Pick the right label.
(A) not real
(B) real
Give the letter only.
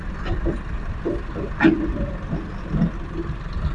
A